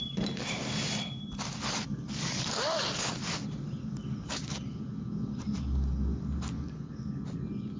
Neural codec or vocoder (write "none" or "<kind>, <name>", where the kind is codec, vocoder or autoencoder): none